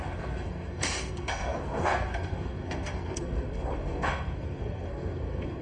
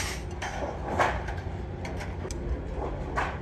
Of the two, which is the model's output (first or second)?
first